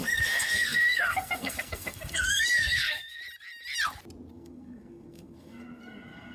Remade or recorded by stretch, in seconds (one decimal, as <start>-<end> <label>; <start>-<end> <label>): 0.0-3.2 remade; 3.2-4.3 recorded; 4.3-6.3 remade